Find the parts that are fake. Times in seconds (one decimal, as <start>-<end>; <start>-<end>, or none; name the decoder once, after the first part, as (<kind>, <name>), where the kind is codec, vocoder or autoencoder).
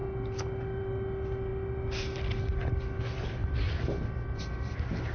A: none